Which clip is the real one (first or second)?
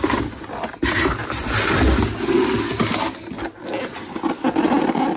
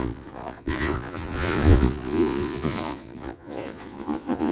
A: first